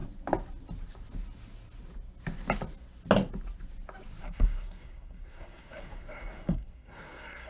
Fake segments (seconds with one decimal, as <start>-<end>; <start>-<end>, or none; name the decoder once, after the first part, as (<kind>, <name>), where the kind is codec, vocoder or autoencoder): 4.2-7.5 (codec, SNAC)

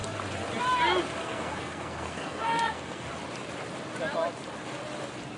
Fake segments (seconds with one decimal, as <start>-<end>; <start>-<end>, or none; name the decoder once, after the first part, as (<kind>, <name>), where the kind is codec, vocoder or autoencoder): 1.2-3.1 (codec, SNAC)

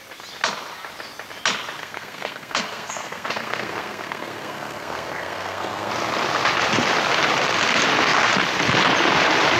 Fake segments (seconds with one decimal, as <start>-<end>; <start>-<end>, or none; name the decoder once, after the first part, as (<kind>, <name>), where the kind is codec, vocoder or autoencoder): 1.8-5.9 (codec, SNAC)